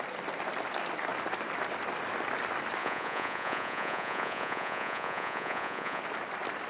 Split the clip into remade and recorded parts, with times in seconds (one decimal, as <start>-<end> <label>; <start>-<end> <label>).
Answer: 0.0-2.8 recorded; 2.8-6.0 remade; 6.0-6.7 recorded